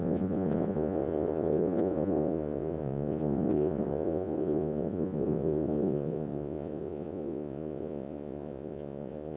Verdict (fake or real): fake